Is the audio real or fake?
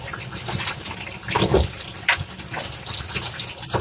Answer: real